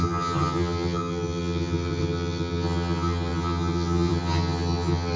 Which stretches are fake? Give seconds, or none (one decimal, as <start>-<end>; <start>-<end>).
0.0-5.2